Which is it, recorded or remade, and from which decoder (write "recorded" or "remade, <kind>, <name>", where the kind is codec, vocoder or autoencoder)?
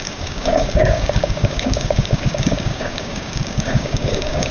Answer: remade, codec, DAC